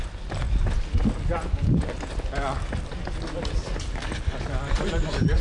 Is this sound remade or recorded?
recorded